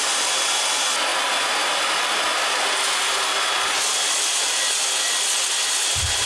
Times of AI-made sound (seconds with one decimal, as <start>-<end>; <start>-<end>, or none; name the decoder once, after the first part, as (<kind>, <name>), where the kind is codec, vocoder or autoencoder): none